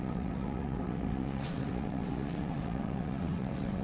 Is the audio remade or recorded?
remade